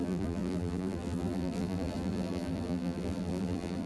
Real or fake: fake